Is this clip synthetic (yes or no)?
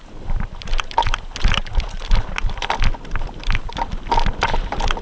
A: no